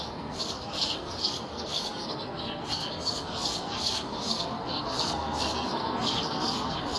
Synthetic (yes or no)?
yes